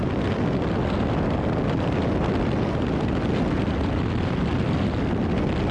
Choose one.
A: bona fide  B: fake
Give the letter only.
A